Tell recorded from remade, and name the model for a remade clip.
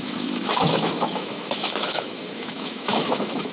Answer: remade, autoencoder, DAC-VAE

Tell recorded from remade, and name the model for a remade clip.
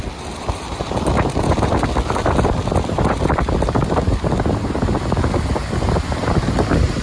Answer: recorded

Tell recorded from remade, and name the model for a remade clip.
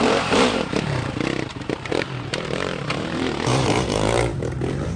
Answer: remade, vocoder, BigVGAN v2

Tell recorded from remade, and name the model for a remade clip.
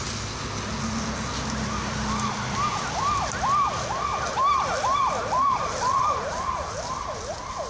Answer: recorded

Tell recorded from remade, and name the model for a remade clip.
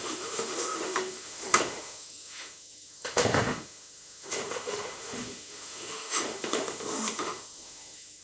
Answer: remade, autoencoder, DAC-VAE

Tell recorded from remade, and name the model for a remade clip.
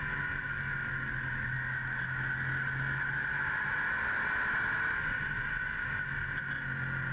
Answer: recorded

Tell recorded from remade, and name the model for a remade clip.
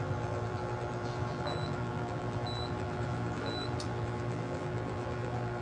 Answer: remade, vocoder, BigVGAN v2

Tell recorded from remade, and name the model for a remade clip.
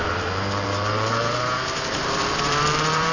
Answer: remade, vocoder, BigVGAN v2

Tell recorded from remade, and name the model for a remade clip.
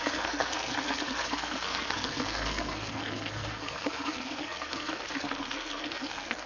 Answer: remade, codec, SNAC